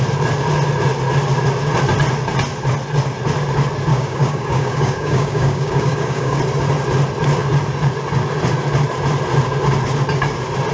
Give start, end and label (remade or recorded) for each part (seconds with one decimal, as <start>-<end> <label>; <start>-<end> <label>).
0.0-3.9 recorded; 3.9-6.4 remade; 6.4-10.7 recorded